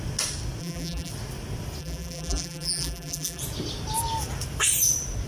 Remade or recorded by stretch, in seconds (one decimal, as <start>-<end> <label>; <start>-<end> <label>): 0.0-0.6 recorded; 0.6-1.1 remade; 1.1-1.8 recorded; 1.8-3.4 remade; 3.4-5.3 recorded